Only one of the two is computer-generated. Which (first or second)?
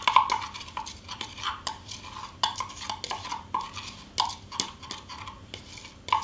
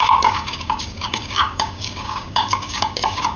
second